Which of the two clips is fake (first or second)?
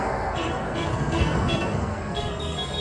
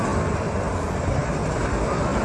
first